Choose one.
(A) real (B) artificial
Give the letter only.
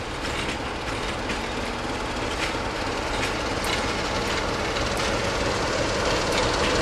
A